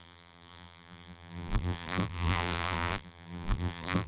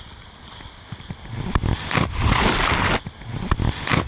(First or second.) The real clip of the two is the second